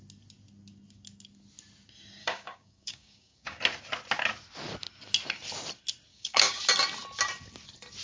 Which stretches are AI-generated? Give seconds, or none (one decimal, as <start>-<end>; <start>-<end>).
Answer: 2.2-3.6; 6.1-6.6